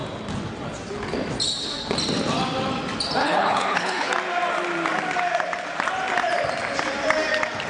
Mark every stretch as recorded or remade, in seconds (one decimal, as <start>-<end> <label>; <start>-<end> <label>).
0.0-3.2 recorded; 3.2-4.1 remade; 4.1-7.7 recorded

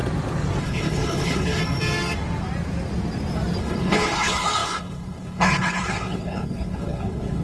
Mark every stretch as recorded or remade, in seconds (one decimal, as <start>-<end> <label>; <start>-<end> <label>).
0.0-0.6 recorded; 0.6-1.6 remade; 1.6-3.6 recorded; 3.6-7.4 remade

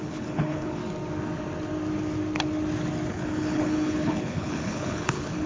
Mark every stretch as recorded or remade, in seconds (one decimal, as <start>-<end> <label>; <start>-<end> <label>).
0.0-0.8 remade; 0.8-3.1 recorded; 3.1-5.5 remade

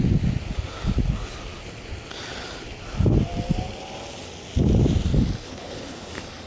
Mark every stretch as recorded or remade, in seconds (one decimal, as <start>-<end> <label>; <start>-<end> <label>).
0.0-5.4 recorded; 5.4-6.1 remade; 6.1-6.5 recorded